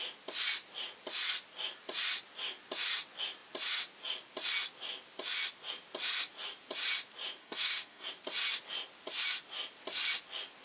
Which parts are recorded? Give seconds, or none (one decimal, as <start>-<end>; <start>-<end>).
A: 0.0-7.4; 8.1-10.6